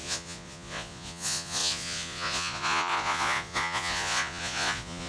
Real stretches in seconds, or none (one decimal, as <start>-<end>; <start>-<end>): none